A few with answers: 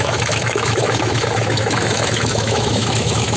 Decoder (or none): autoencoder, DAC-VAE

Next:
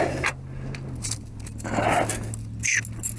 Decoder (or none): none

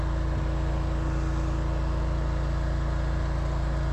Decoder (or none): none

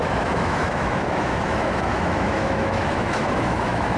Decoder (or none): autoencoder, DAC-VAE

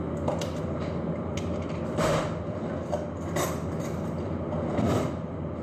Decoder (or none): none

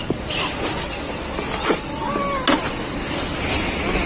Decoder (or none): none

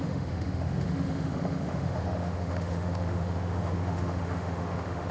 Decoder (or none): autoencoder, DAC-VAE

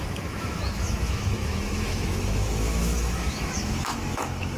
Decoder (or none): autoencoder, DAC-VAE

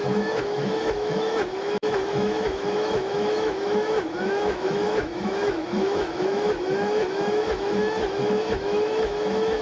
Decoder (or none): autoencoder, DAC-VAE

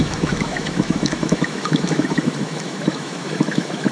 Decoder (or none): autoencoder, DAC-VAE